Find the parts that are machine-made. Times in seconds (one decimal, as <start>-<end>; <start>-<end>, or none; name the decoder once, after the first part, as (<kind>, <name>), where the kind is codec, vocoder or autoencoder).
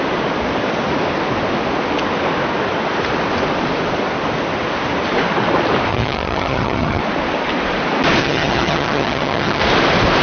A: 5.9-7.0 (vocoder, HiFi-GAN); 8.2-9.6